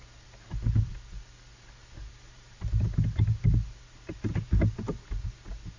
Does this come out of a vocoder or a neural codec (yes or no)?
no